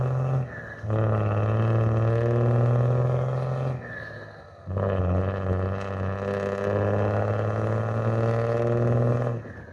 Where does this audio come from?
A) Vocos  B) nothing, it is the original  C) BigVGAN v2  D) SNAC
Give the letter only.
B